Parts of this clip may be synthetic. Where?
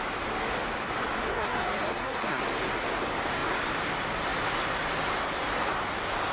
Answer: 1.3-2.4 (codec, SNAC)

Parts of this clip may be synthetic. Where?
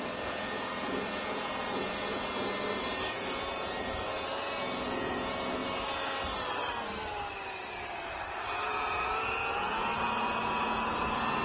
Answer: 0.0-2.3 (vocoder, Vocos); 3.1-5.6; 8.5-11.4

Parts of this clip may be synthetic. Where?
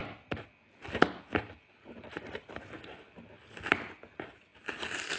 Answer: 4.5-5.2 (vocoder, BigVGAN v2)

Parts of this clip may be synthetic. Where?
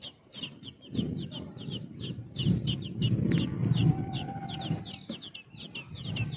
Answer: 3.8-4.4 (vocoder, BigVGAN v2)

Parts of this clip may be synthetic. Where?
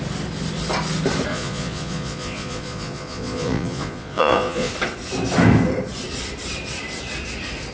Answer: 1.3-4.7 (vocoder, Vocos)